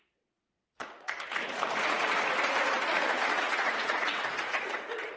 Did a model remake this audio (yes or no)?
yes